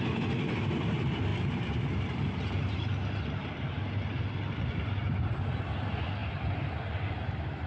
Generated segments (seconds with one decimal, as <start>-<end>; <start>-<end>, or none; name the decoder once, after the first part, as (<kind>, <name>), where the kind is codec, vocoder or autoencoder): none